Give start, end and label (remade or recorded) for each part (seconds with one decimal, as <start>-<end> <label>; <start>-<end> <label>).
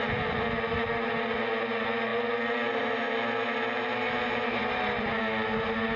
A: 0.0-6.0 recorded